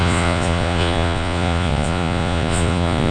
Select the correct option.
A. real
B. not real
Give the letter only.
B